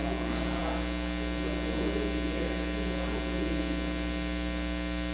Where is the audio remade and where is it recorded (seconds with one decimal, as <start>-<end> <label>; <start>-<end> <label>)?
0.0-5.1 recorded